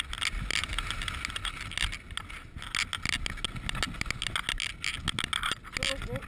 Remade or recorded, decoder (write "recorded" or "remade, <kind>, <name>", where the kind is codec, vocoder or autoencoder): recorded